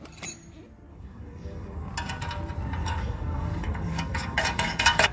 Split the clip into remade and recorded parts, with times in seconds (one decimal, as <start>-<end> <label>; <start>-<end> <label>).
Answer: 0.0-0.9 recorded; 0.9-1.9 remade; 1.9-2.8 recorded; 2.8-5.1 remade